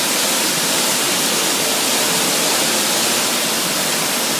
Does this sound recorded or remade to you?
recorded